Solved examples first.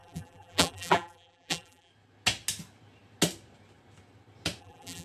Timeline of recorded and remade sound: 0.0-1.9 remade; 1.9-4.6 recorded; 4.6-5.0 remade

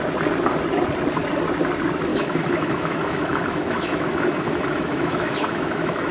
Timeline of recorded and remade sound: 0.0-2.1 recorded; 2.1-6.1 remade

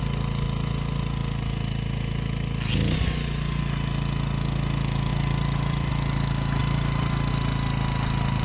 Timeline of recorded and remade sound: 0.0-5.1 recorded; 5.1-5.9 remade; 5.9-6.6 recorded; 6.6-7.3 remade; 7.3-8.4 recorded

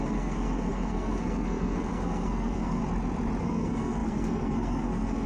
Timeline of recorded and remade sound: 0.0-2.8 remade; 2.8-3.4 recorded; 3.4-5.3 remade

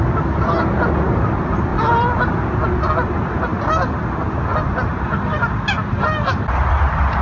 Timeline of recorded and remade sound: 0.0-1.7 recorded; 1.7-2.5 remade; 2.5-7.2 recorded

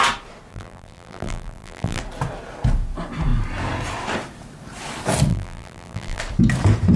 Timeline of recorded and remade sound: 0.0-0.5 recorded; 0.5-2.0 remade; 2.0-5.3 recorded; 5.3-6.2 remade; 6.2-7.0 recorded